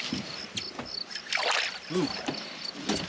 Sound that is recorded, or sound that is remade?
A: recorded